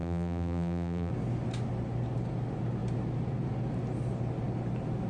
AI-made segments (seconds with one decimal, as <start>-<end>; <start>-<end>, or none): 0.0-1.1